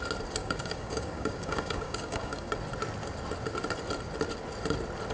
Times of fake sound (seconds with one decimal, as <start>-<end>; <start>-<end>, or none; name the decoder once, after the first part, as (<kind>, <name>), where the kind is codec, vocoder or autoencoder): 0.4-2.5 (codec, DAC)